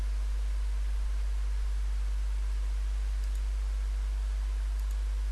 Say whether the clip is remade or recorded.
recorded